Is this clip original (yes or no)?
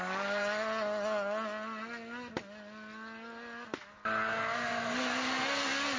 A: yes